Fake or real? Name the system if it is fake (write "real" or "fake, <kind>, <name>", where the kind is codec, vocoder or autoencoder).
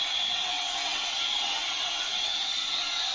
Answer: fake, vocoder, WaveNeXt